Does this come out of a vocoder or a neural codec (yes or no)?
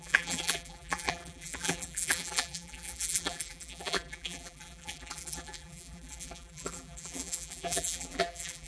yes